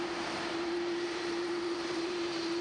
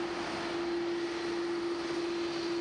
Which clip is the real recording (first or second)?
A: second